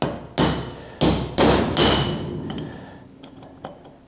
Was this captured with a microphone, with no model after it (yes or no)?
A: yes